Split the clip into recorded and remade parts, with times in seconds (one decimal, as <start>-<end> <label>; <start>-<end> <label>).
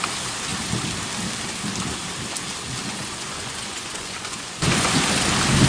0.0-2.8 recorded; 2.8-5.0 remade; 5.0-5.7 recorded